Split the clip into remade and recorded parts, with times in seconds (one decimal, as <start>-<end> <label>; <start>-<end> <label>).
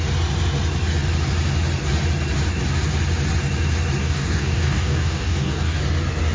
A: 0.0-4.0 recorded; 4.0-5.8 remade; 5.8-6.3 recorded